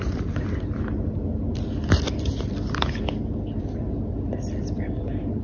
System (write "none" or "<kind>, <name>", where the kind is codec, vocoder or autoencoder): none